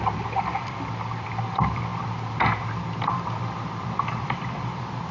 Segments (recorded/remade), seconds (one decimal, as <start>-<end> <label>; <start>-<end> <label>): 0.0-5.1 remade